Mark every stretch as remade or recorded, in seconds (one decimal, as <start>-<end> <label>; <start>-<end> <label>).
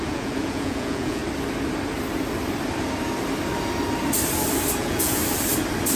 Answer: 0.0-1.2 remade; 1.2-4.8 recorded; 4.8-5.2 remade; 5.2-6.0 recorded